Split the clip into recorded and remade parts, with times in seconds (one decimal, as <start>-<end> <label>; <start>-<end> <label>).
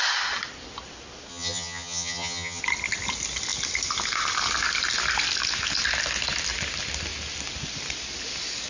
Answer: 0.0-1.3 recorded; 1.3-2.6 remade; 2.6-8.7 recorded